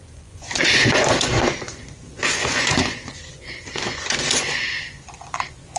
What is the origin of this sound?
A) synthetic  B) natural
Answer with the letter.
A